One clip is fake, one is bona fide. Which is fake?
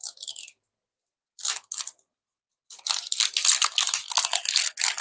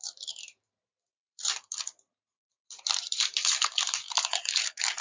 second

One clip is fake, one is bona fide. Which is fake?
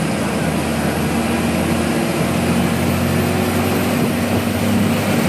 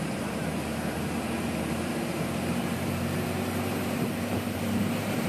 second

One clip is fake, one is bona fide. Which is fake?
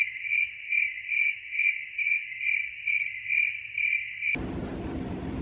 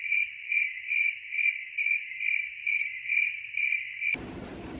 second